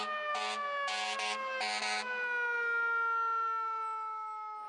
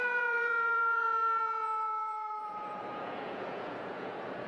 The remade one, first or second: second